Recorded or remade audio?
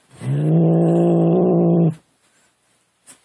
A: recorded